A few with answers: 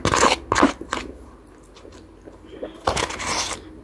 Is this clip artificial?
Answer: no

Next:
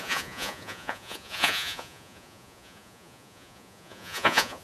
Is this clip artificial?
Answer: yes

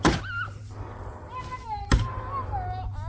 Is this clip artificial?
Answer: yes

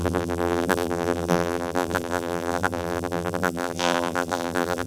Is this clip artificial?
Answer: yes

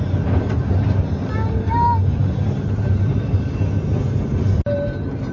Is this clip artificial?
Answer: no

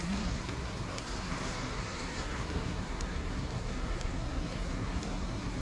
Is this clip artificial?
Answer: yes